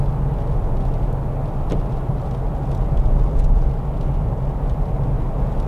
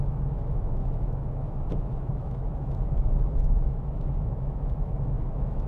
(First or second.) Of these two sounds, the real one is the first